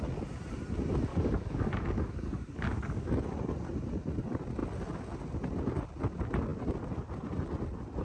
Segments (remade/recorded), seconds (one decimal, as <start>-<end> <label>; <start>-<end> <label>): 0.0-1.1 recorded; 1.1-3.1 remade; 3.1-8.0 recorded